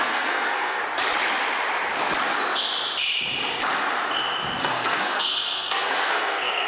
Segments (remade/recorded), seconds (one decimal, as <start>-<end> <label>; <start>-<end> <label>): 0.0-0.8 remade; 0.8-4.6 recorded; 4.6-6.7 remade